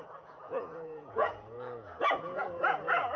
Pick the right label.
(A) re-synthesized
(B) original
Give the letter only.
A